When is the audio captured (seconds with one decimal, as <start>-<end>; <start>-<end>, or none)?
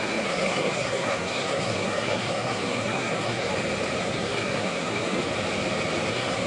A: 3.5-4.0; 5.3-6.1